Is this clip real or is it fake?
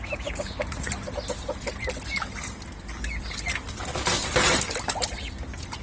real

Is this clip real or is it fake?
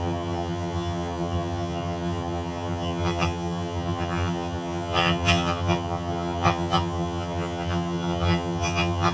fake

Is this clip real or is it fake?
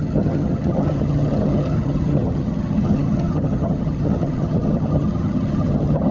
fake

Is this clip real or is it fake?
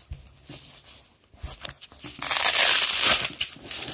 real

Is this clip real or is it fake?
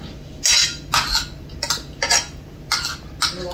real